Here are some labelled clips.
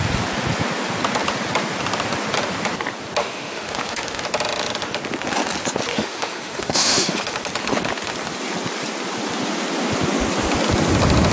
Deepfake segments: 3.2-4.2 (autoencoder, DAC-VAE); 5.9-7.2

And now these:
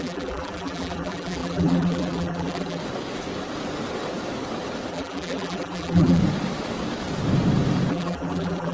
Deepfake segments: 0.0-2.8 (vocoder, BigVGAN v2); 4.9-6.2; 7.9-8.7

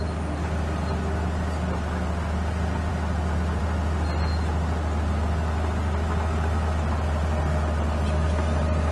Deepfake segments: none

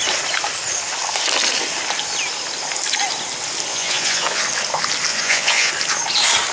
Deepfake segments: 3.7-4.4 (vocoder, Vocos); 5.1-5.7

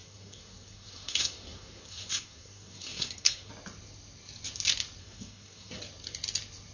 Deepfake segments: 0.0-3.5 (codec, SNAC); 5.0-5.8

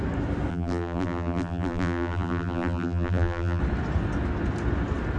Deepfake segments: 0.5-3.6 (vocoder, BigVGAN v2)

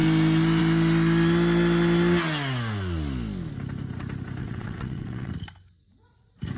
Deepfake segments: 4.4-5.3 (vocoder, WaveNeXt)